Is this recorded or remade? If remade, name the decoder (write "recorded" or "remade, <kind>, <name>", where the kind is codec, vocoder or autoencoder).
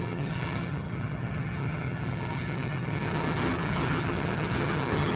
remade, vocoder, HiFi-GAN